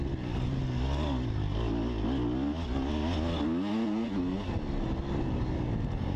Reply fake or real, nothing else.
real